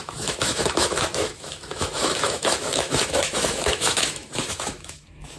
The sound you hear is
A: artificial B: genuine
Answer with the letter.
A